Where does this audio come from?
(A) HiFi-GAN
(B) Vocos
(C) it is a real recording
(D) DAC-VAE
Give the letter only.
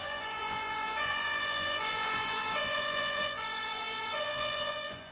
B